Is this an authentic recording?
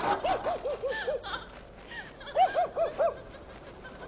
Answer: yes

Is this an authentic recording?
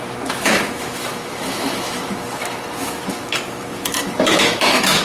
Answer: no